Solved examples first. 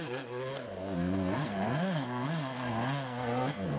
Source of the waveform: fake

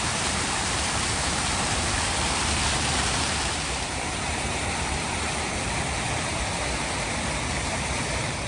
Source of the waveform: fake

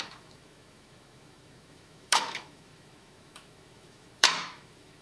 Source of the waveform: fake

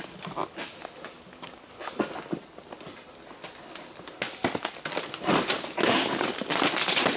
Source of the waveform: real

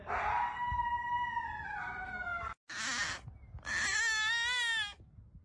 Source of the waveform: real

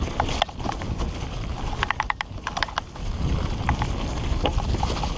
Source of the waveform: real